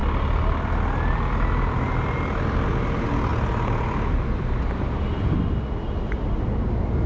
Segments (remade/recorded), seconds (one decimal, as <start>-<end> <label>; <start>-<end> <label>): 0.0-7.1 recorded